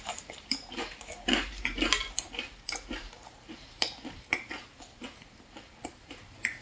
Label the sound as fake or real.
fake